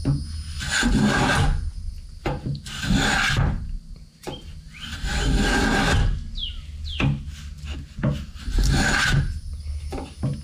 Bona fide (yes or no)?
yes